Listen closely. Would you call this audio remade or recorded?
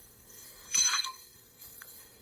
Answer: remade